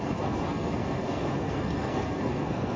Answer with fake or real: fake